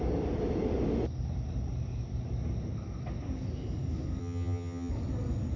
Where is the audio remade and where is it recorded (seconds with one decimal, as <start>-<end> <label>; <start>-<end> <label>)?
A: 0.0-4.2 recorded; 4.2-4.9 remade; 4.9-5.6 recorded